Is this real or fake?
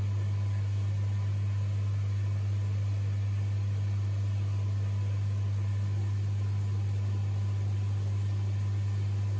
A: real